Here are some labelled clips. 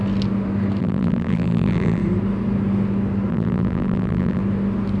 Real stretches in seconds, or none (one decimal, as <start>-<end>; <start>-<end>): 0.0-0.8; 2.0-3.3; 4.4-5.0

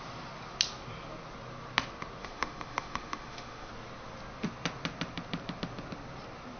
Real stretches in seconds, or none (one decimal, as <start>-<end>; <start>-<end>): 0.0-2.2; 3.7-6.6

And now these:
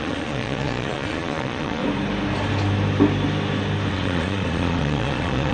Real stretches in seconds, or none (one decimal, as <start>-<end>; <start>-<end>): 1.8-3.9

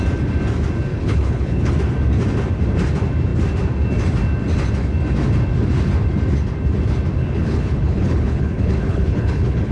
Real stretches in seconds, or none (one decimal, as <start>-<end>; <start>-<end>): 0.0-0.9; 1.7-7.2

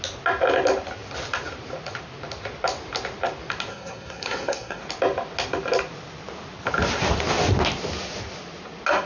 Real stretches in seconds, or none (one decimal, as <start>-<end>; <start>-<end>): 0.0-3.7; 4.8-9.1